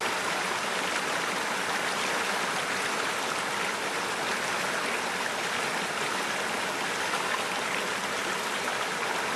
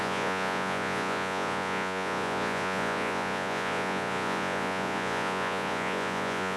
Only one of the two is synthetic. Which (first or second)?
second